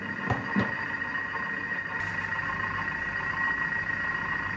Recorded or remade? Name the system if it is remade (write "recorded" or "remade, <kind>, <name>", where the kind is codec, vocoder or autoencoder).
recorded